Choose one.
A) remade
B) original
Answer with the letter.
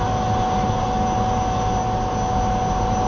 B